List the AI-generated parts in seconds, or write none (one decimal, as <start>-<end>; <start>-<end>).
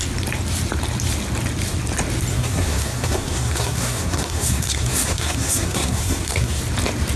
2.3-6.6